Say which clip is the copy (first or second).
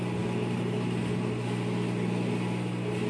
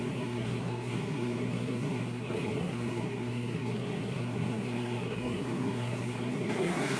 second